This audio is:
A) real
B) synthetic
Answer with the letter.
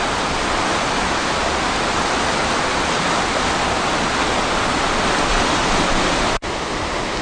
A